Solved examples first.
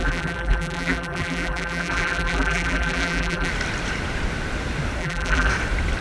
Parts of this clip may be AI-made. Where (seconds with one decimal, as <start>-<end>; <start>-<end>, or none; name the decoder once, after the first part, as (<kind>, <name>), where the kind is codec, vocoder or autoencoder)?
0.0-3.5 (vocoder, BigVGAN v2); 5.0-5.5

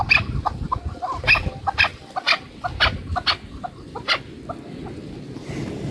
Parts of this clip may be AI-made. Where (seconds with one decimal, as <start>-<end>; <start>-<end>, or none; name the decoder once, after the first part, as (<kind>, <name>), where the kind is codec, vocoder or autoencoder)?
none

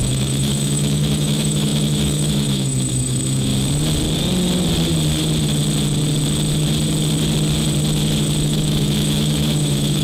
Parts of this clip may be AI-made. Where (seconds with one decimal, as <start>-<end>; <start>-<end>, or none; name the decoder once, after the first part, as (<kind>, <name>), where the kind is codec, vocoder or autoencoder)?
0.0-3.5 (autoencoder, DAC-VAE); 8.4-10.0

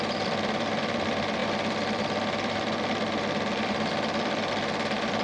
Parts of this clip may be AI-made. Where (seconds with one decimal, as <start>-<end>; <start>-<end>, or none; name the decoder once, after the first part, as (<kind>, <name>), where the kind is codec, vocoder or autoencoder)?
0.0-5.2 (vocoder, BigVGAN v2)

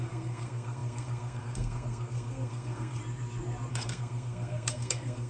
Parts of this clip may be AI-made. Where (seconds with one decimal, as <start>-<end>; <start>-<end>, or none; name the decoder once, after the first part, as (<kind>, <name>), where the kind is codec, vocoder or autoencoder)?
0.0-3.0 (codec, SNAC); 3.7-5.3

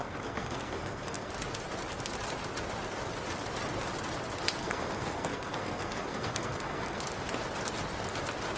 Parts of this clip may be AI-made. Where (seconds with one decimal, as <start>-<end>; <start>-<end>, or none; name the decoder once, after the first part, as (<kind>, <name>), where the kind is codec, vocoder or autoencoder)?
0.0-1.3 (codec, SNAC); 4.6-7.0

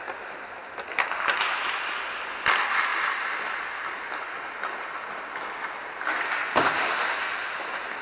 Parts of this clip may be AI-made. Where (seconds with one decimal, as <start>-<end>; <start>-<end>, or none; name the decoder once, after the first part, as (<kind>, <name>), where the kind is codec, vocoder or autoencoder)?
none

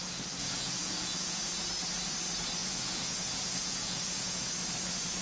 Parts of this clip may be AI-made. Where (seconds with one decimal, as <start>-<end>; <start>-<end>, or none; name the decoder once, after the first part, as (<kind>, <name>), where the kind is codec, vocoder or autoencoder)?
0.4-1.4 (vocoder, Vocos); 2.6-4.5